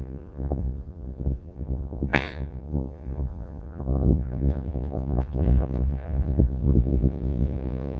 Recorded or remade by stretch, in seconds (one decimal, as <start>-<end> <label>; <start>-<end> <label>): 0.0-8.0 remade